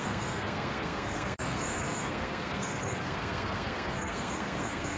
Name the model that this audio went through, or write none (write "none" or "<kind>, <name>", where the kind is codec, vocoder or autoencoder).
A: codec, SNAC